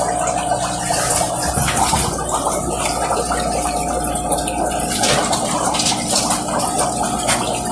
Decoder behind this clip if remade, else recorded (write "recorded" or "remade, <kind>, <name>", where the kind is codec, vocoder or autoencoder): recorded